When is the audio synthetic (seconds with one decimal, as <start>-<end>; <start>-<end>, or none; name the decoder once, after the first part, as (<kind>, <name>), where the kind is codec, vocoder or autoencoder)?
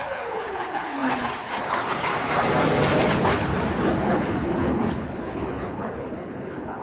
0.0-2.1 (codec, HILCodec); 3.1-3.5; 4.0-6.8